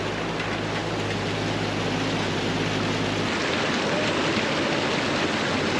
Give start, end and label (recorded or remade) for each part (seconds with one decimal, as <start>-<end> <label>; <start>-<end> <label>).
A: 0.0-5.8 recorded